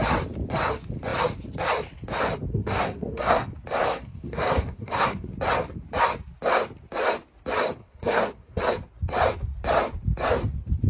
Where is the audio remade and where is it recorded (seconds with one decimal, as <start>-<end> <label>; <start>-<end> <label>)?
0.0-2.5 recorded; 2.5-3.5 remade; 3.5-3.9 recorded; 3.9-5.3 remade; 5.3-7.8 recorded; 7.8-8.6 remade; 8.6-10.9 recorded

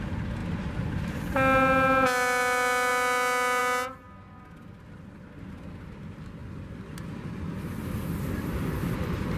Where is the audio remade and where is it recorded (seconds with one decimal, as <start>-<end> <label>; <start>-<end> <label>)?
0.0-9.4 recorded

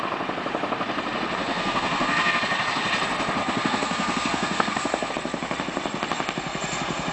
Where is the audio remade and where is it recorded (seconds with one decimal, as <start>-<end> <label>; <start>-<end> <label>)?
0.0-1.5 recorded; 1.5-2.4 remade; 2.4-3.4 recorded; 3.4-5.1 remade; 5.1-7.1 recorded

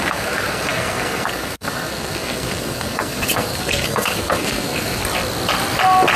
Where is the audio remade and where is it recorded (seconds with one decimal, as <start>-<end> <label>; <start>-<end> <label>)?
0.0-5.0 remade; 5.0-6.2 recorded

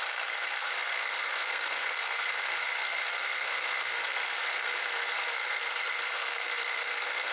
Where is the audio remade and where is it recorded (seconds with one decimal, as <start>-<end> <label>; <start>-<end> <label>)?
0.0-7.3 remade

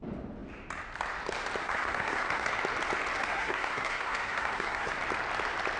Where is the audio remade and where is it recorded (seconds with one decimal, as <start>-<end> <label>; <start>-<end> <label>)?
0.0-1.6 recorded; 1.6-2.5 remade; 2.5-3.2 recorded; 3.2-5.0 remade; 5.0-5.8 recorded

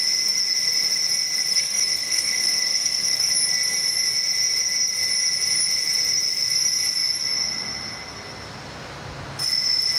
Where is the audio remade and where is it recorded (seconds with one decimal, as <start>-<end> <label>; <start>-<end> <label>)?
0.0-1.5 recorded; 1.5-3.3 remade; 3.3-10.0 recorded